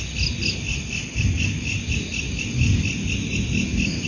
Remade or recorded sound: recorded